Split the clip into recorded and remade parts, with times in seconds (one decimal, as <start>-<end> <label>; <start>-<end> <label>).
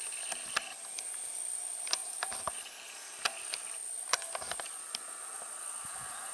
0.0-6.3 recorded